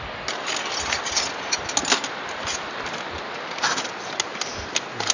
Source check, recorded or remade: recorded